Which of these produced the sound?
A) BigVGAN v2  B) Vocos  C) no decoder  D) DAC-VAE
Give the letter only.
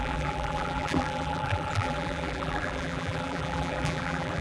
A